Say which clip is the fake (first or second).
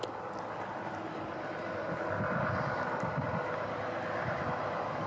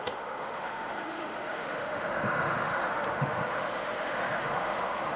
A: second